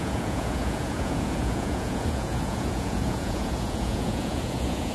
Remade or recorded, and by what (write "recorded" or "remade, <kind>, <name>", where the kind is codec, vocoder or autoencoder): remade, vocoder, Vocos